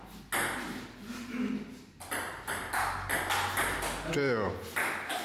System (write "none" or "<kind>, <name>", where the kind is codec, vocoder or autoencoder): none